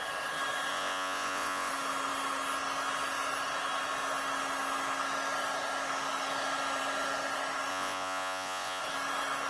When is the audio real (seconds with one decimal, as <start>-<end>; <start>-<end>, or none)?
0.0-0.7; 1.7-7.7; 8.8-9.5